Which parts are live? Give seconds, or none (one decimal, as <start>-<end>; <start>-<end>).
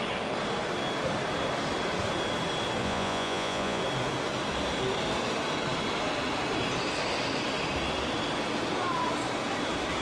0.0-2.8; 3.8-10.0